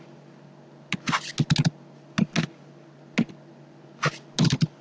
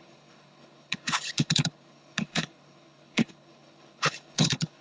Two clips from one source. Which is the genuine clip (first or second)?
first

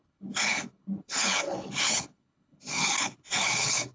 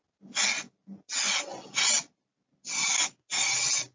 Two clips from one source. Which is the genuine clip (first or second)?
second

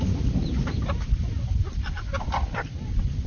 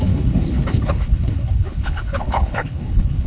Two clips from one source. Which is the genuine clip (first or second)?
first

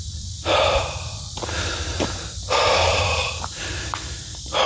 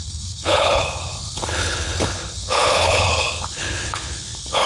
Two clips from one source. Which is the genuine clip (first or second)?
first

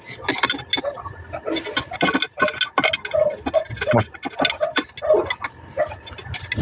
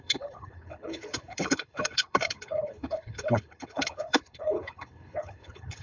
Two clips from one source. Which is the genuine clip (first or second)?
first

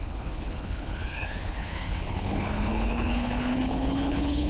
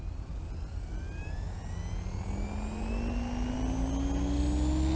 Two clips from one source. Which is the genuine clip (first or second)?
second